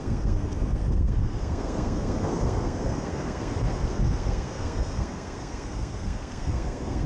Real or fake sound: fake